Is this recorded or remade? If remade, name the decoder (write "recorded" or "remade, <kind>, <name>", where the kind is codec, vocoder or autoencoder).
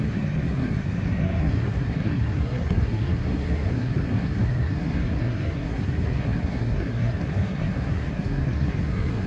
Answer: remade, codec, SNAC